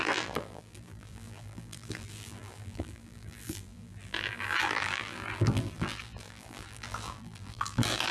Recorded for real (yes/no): no